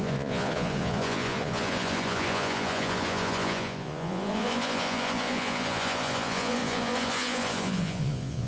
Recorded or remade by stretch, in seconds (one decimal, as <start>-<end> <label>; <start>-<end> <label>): 0.0-8.5 remade

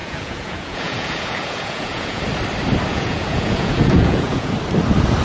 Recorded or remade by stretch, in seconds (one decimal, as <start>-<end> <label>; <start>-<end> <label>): 0.0-2.2 remade; 2.2-2.9 recorded; 2.9-4.5 remade; 4.5-5.2 recorded

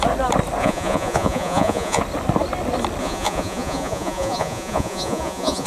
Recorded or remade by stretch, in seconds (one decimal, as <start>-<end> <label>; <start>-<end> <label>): 0.0-0.6 recorded; 0.6-2.0 remade; 2.0-3.0 recorded; 3.0-5.7 remade

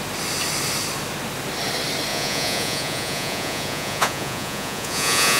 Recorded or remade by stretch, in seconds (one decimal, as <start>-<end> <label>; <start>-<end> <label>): 0.0-2.1 recorded; 2.1-5.4 remade

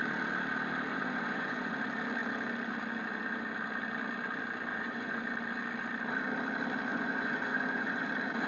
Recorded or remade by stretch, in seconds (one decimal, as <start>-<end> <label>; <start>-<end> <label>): 0.0-0.9 recorded; 0.9-1.7 remade; 1.7-4.7 recorded; 4.7-5.2 remade; 5.2-6.9 recorded; 6.9-8.0 remade; 8.0-8.5 recorded

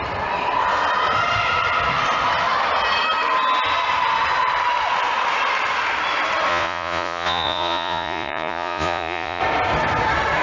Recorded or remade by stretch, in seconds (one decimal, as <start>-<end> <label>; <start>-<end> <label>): 0.0-6.5 recorded; 6.5-9.4 remade; 9.4-10.4 recorded

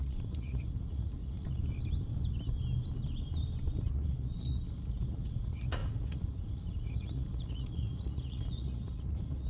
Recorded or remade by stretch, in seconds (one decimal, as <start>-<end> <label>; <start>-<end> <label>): 0.0-1.6 remade; 1.6-3.8 recorded; 3.8-9.5 remade